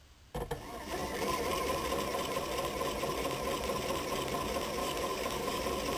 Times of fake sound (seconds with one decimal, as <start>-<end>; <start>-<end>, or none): 4.8-5.6